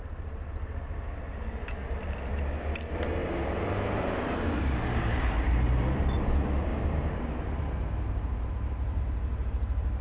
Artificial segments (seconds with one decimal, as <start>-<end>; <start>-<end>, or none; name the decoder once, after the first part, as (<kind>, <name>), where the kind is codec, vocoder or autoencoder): 1.8-2.5 (vocoder, BigVGAN v2); 3.2-5.9; 6.7-9.0